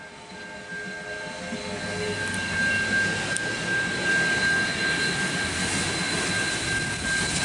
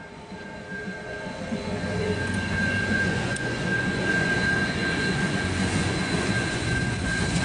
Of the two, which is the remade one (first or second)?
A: second